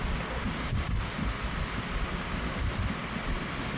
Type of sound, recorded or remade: remade